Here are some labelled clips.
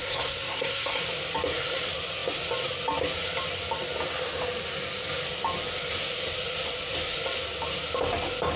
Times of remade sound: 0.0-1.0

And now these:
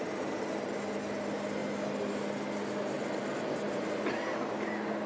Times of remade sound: none

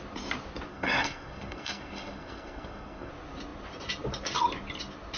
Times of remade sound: 0.7-3.1

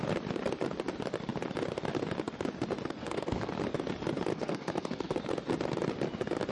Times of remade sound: 3.0-3.5; 4.3-5.2

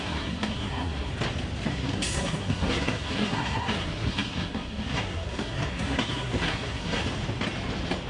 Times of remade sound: 0.0-1.1; 1.7-7.0